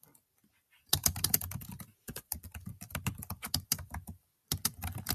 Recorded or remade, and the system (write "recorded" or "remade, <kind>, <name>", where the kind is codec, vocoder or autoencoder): recorded